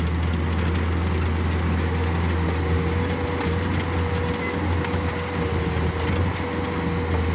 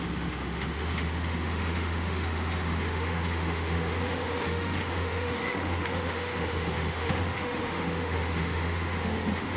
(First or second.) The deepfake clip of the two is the second